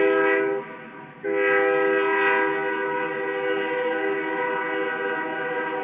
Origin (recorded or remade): recorded